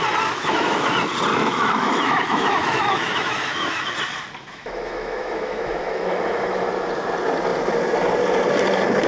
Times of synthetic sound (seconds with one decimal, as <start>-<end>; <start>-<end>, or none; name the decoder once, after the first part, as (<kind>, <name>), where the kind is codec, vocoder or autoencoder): 0.4-0.9 (autoencoder, DAC-VAE); 1.3-3.8; 4.5-6.6